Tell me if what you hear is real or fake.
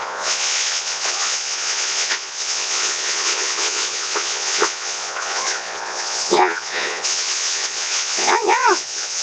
fake